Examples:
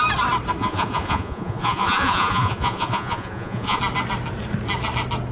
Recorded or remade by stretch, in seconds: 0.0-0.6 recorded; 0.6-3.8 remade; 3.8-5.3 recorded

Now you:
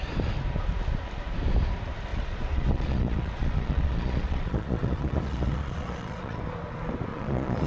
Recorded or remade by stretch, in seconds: 0.0-2.1 recorded; 2.1-6.4 remade; 6.4-7.1 recorded; 7.1-7.7 remade

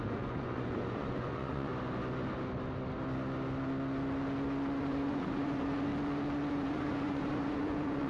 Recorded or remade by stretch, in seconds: 0.0-1.7 remade; 1.7-4.8 recorded; 4.8-5.9 remade; 5.9-6.5 recorded; 6.5-8.1 remade

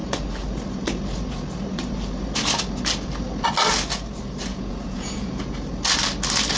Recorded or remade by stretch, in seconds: 0.0-4.5 recorded; 4.5-5.4 remade; 5.4-6.6 recorded

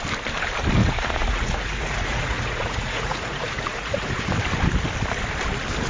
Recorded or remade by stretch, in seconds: 0.0-0.8 recorded; 0.8-4.3 remade; 4.3-5.9 recorded

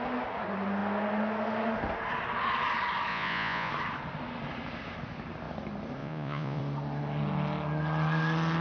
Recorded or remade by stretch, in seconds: 0.0-3.1 recorded; 3.1-3.7 remade; 3.7-6.0 recorded; 6.0-6.6 remade; 6.6-8.6 recorded